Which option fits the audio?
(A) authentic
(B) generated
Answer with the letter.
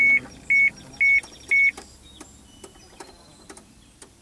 A